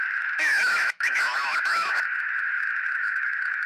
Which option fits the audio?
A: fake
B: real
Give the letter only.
A